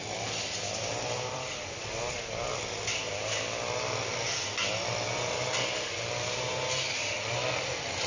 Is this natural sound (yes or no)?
yes